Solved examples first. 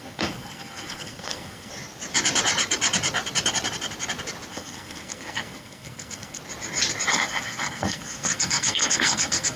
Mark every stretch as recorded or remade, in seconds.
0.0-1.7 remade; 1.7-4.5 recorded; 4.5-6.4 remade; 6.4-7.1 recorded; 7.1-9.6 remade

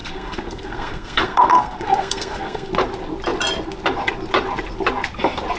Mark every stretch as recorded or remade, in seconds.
0.0-2.7 remade; 2.7-5.6 recorded